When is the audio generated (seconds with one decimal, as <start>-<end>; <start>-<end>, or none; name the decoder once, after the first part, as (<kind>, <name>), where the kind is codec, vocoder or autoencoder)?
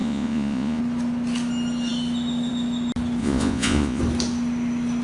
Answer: 0.0-0.8 (vocoder, Vocos); 3.2-4.0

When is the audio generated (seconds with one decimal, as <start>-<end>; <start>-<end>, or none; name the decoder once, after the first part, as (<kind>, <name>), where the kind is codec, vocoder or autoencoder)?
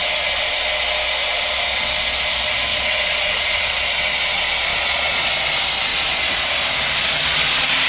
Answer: 2.7-3.9 (vocoder, Vocos); 4.7-5.3; 5.9-6.5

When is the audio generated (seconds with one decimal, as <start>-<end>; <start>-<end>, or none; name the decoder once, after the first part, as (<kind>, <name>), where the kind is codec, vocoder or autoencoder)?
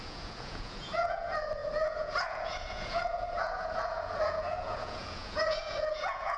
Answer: 0.0-6.4 (vocoder, Vocos)